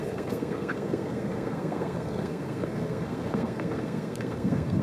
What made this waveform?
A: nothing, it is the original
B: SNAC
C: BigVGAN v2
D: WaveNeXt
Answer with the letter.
B